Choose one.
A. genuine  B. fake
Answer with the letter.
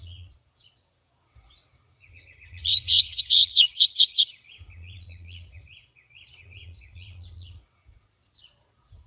B